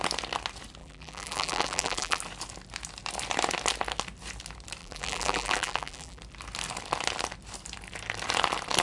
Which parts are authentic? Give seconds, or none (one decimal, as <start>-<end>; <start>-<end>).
0.0-0.8; 2.2-4.8; 6.2-8.8